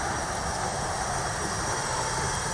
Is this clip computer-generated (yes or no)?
no